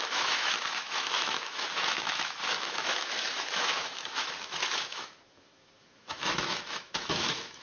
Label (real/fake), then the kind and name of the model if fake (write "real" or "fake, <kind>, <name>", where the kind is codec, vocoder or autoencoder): fake, autoencoder, DAC-VAE